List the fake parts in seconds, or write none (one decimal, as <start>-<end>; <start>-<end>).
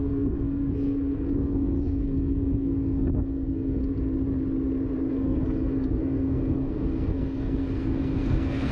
0.0-3.8; 5.1-8.7